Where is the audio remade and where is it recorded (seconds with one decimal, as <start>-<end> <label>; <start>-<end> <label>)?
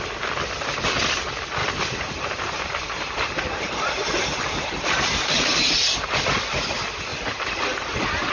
0.0-1.6 recorded; 1.6-6.2 remade; 6.2-8.3 recorded